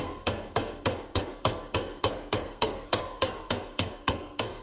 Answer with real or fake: fake